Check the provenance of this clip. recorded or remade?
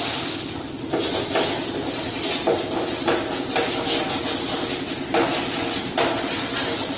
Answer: recorded